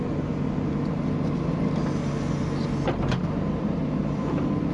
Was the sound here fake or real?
real